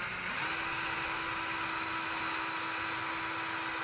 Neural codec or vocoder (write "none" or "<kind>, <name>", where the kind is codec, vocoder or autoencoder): none